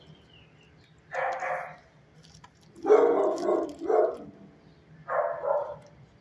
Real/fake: real